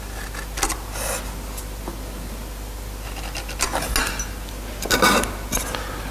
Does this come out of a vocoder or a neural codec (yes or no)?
no